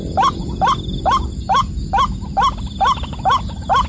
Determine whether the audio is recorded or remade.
recorded